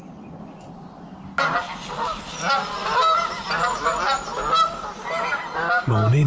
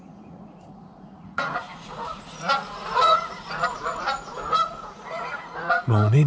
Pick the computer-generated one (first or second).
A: second